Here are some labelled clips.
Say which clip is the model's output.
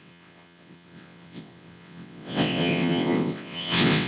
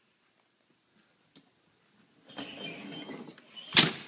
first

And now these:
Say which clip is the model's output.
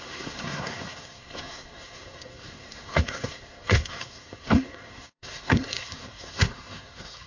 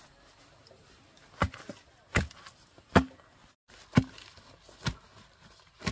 first